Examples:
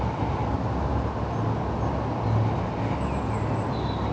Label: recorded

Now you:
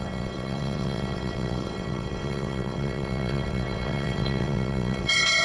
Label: remade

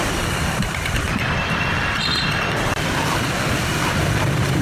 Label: remade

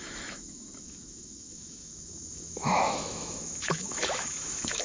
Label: remade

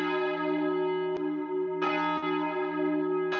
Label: recorded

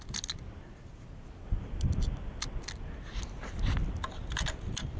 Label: recorded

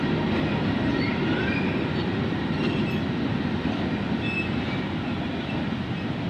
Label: recorded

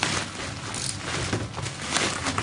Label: recorded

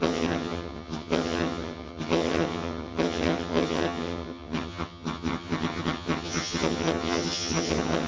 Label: remade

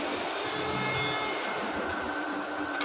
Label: recorded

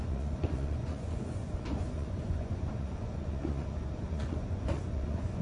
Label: remade